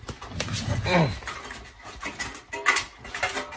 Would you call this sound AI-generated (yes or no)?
no